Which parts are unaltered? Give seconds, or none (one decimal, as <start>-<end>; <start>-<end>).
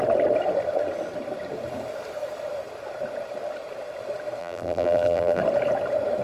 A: 0.0-4.4; 5.4-6.2